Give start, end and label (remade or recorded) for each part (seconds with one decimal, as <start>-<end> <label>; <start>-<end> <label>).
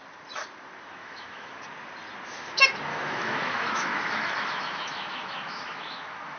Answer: 0.0-1.0 recorded; 1.0-1.6 remade; 1.6-2.9 recorded; 2.9-6.4 remade